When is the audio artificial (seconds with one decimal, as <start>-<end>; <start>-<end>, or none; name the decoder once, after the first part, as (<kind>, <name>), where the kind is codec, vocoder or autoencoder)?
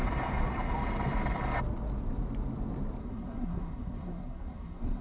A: 3.0-5.0 (codec, SNAC)